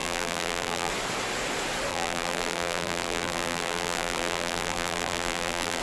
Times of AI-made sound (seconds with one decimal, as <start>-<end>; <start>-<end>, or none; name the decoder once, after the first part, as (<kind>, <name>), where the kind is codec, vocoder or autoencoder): 0.0-0.9 (vocoder, BigVGAN v2); 1.9-5.8